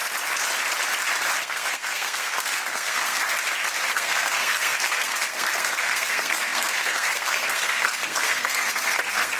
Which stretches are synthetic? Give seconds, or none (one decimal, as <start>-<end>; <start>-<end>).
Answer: 1.4-3.2; 3.9-9.4